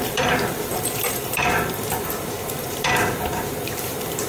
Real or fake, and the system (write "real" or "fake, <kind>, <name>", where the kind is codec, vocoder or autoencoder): fake, vocoder, BigVGAN v2